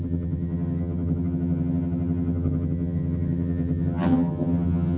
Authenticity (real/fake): fake